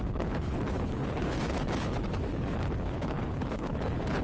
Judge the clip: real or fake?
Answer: fake